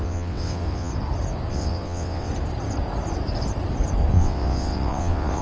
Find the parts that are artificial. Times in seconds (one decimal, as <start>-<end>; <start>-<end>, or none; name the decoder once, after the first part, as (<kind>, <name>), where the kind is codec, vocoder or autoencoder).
0.0-0.9 (vocoder, WaveNeXt); 1.5-2.3; 4.1-5.4